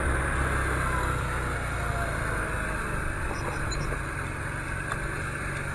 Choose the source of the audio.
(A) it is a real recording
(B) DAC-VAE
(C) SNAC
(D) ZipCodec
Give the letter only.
A